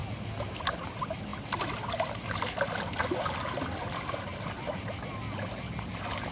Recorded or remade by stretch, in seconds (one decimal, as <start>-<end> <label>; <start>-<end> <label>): 0.0-6.3 recorded